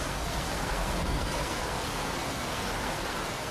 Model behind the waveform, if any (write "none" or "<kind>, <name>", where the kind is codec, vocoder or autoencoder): codec, SNAC